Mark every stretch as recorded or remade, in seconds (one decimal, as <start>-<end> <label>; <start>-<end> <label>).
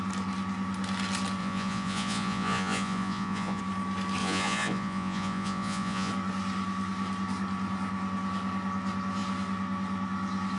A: 0.0-1.4 recorded; 1.4-3.6 remade; 3.6-4.2 recorded; 4.2-6.1 remade; 6.1-10.6 recorded